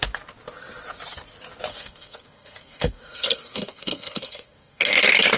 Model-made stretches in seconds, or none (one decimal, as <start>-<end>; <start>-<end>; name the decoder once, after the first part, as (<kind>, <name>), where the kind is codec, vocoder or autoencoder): 1.7-4.9 (codec, SNAC)